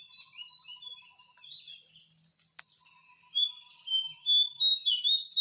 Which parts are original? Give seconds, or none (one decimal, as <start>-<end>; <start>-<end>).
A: 0.0-5.4